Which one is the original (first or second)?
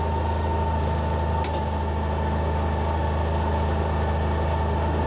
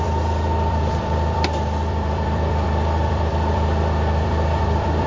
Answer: first